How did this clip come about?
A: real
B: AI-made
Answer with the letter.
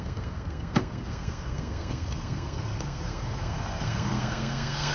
B